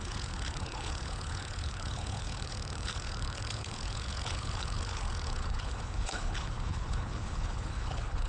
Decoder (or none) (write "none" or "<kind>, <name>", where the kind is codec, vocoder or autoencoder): codec, HILCodec